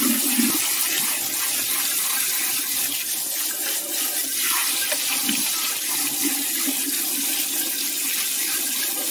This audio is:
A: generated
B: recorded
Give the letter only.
B